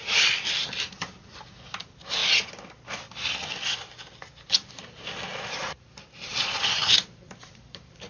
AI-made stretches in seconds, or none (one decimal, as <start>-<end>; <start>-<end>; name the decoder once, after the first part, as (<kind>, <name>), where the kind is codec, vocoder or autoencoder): 0.0-2.2 (vocoder, BigVGAN v2); 4.7-8.1